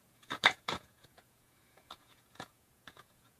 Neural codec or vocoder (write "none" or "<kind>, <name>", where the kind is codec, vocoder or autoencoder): vocoder, Vocos